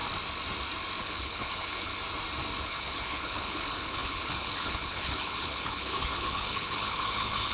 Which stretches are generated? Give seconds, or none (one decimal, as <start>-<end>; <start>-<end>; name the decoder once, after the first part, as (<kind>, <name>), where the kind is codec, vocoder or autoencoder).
1.0-1.9 (codec, HILCodec); 2.6-7.5